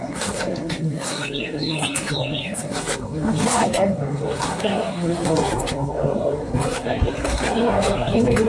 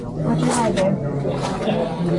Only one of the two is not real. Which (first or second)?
first